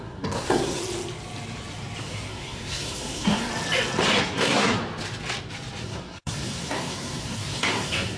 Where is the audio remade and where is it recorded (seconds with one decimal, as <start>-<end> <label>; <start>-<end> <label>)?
0.0-0.8 remade; 0.8-2.0 recorded; 2.0-3.5 remade; 3.5-4.2 recorded; 4.2-4.8 remade; 4.8-5.8 recorded; 5.8-8.2 remade